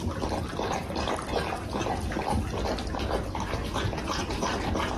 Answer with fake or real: real